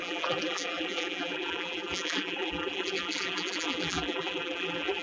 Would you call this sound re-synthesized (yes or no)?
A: yes